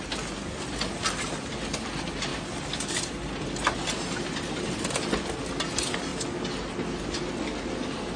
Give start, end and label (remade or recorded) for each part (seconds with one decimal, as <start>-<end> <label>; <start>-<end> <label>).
0.0-8.2 recorded